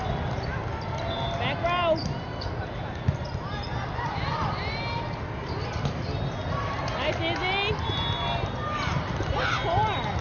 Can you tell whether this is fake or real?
real